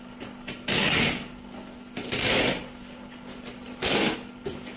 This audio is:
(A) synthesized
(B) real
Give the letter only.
B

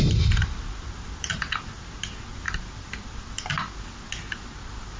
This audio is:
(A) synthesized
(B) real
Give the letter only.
B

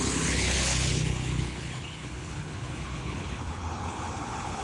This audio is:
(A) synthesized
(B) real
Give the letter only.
A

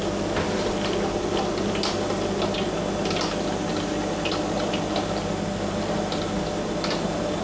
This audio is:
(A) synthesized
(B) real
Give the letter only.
B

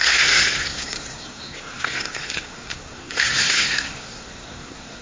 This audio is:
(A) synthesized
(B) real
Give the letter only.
A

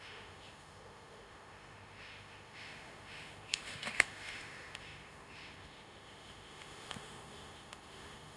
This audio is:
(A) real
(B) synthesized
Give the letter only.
B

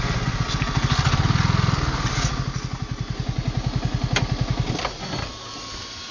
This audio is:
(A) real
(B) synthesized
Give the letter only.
A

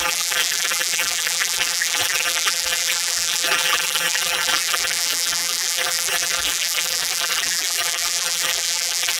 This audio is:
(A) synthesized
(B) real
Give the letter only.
A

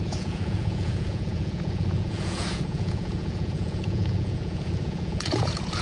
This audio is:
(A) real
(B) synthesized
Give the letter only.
B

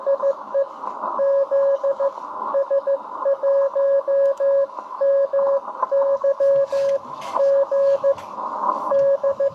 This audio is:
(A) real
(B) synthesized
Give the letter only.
B